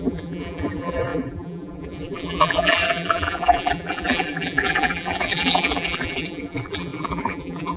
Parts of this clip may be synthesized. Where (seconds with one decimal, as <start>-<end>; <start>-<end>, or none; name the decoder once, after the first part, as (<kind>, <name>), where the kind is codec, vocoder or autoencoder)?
0.0-7.8 (vocoder, BigVGAN v2)